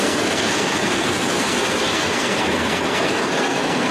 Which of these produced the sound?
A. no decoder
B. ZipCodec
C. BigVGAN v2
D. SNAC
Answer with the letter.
D